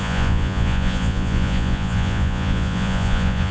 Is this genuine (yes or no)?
no